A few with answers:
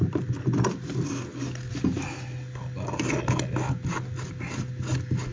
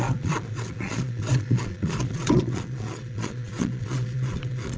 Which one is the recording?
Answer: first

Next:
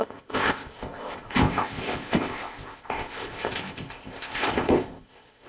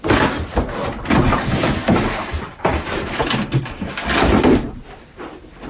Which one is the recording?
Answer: second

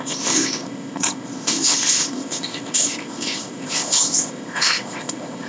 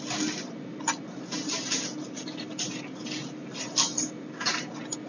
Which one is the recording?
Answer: second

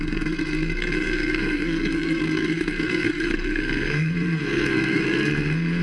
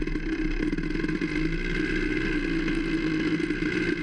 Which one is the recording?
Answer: second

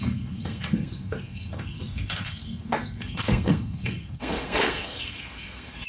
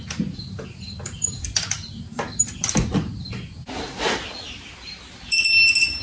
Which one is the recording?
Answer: second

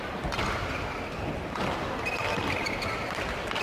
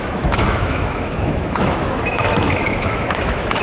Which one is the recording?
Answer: first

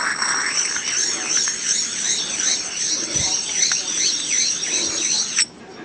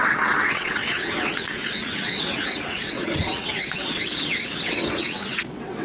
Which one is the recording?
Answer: first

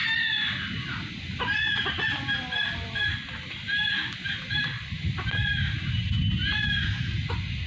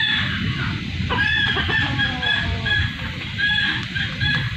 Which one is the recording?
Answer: first